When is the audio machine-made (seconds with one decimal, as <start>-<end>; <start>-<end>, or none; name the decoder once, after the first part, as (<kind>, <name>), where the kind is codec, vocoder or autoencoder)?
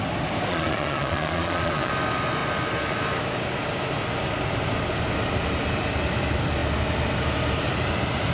0.5-1.9 (vocoder, Vocos)